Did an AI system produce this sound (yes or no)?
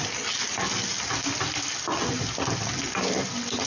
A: no